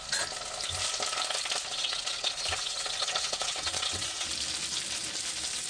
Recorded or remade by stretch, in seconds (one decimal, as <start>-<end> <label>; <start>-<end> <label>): 0.0-1.7 recorded; 1.7-4.3 remade; 4.3-5.7 recorded